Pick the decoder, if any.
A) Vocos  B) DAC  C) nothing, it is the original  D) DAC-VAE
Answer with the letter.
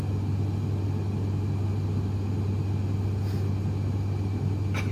C